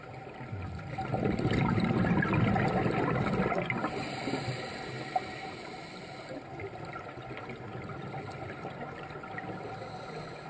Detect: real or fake real